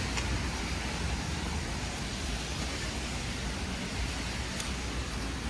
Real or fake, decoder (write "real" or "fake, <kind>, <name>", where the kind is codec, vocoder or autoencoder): real